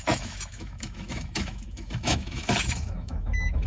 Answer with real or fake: fake